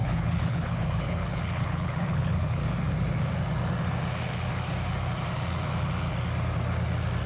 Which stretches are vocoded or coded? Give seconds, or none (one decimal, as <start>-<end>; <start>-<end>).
0.0-2.6